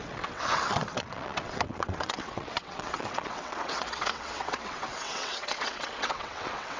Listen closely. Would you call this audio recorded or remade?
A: remade